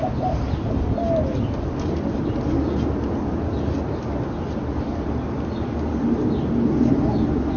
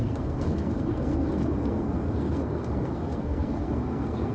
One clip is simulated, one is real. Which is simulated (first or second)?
second